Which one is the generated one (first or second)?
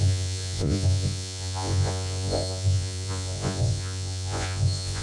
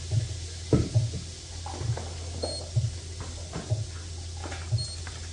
first